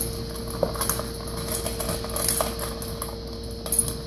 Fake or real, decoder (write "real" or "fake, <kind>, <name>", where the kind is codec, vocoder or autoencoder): real